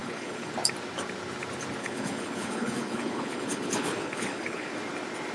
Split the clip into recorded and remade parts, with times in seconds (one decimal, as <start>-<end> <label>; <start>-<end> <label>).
0.0-0.5 remade; 0.5-1.8 recorded; 1.8-4.7 remade; 4.7-5.3 recorded

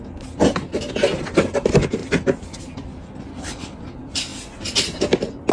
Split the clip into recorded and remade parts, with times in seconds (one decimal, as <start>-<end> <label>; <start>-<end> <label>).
0.0-3.3 recorded; 3.3-3.8 remade; 3.8-5.5 recorded